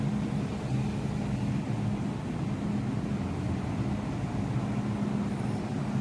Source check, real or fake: real